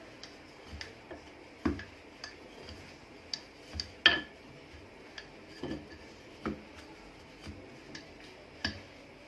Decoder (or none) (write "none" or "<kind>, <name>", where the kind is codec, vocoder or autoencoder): none